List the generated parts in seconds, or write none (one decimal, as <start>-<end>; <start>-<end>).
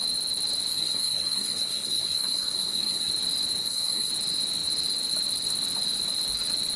0.7-3.1; 3.6-4.1